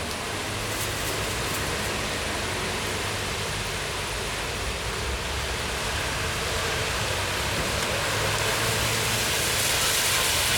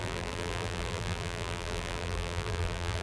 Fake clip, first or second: second